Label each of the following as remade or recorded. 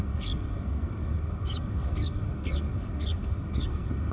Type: remade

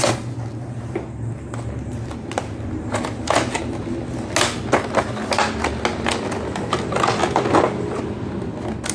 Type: recorded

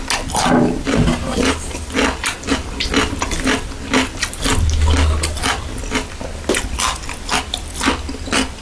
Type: recorded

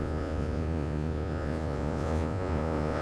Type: remade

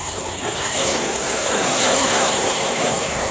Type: remade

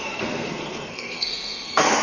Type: remade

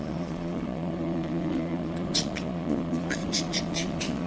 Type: remade